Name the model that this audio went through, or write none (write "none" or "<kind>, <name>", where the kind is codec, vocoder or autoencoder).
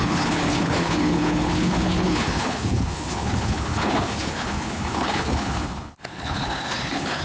codec, HILCodec